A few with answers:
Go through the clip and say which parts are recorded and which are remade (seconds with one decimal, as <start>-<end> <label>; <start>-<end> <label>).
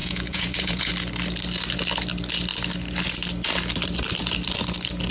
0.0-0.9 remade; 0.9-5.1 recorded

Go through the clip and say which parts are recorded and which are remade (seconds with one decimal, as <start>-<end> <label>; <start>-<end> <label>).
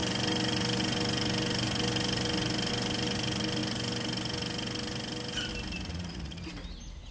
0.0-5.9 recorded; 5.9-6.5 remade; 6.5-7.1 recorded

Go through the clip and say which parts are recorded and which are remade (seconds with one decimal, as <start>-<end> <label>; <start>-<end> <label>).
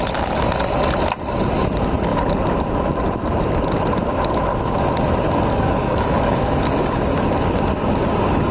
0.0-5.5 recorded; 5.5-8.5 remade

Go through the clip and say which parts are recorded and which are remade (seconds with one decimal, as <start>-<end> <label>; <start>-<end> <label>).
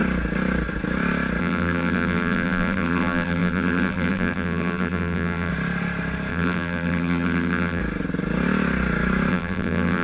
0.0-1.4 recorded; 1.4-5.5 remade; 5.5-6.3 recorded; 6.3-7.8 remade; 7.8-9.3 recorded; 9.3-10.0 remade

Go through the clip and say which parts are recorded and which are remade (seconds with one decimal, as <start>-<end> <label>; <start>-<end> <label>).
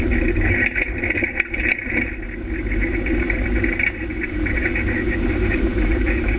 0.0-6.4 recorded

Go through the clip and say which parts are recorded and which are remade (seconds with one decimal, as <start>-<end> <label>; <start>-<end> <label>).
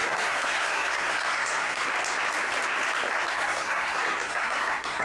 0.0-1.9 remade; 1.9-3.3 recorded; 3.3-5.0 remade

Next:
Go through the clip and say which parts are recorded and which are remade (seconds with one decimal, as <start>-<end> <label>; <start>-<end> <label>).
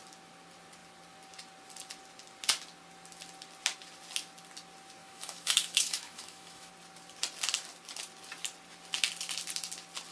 0.0-5.0 recorded; 5.0-6.7 remade; 6.7-10.1 recorded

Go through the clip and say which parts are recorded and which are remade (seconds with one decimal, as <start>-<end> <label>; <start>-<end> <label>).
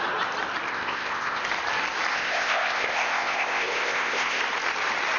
0.0-0.7 recorded; 0.7-1.4 remade; 1.4-2.1 recorded; 2.1-4.4 remade; 4.4-5.2 recorded